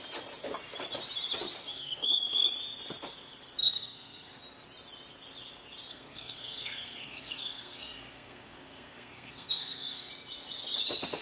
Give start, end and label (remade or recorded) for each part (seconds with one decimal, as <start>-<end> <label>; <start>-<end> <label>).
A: 0.0-1.7 recorded; 1.7-2.5 remade; 2.5-3.6 recorded; 3.6-4.4 remade; 4.4-5.9 recorded; 5.9-10.1 remade; 10.1-11.2 recorded